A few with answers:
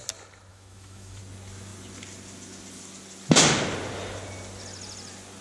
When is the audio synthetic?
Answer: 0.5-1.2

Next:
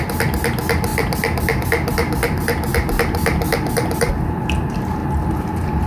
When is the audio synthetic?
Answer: 0.9-4.1

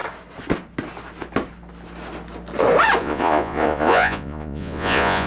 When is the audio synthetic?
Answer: 3.0-5.3

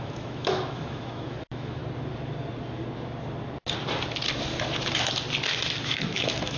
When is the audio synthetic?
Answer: 0.0-1.8; 5.8-6.6

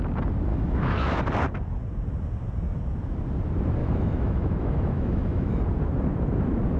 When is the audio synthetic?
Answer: 0.5-1.2; 3.8-5.6

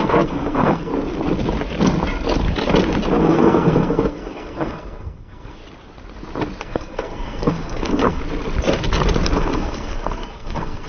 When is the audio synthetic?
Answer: 0.0-0.9; 3.2-5.6; 6.6-8.2; 9.4-10.9